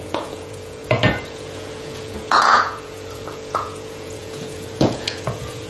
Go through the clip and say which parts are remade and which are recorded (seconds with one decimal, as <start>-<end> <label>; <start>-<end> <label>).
0.0-5.7 remade